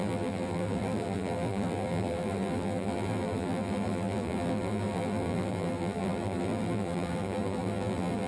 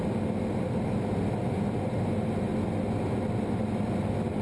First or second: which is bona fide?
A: second